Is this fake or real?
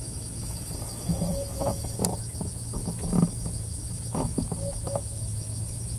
fake